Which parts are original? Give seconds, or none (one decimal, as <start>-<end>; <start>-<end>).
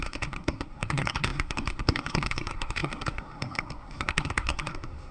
none